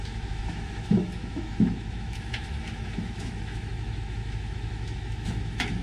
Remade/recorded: remade